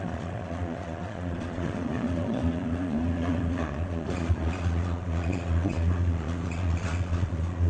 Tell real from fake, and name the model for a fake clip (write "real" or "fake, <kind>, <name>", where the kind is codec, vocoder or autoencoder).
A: fake, vocoder, Vocos